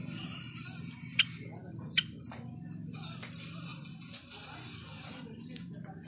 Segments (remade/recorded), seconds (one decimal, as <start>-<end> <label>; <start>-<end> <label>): 0.0-6.1 recorded